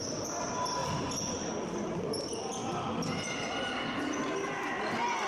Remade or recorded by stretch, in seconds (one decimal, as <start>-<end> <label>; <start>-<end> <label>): 0.0-0.8 recorded; 0.8-2.0 remade; 2.0-5.3 recorded